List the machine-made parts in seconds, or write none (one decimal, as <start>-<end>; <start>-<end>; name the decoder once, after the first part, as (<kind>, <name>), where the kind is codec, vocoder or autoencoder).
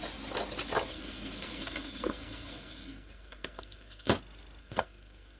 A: 0.9-4.1 (codec, SNAC); 4.6-5.4